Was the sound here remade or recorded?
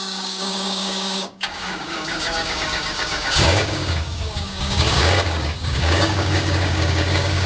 remade